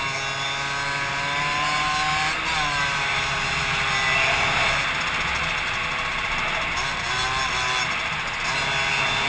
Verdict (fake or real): real